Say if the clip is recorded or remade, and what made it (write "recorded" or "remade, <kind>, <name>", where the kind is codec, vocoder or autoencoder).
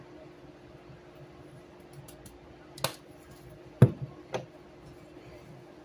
recorded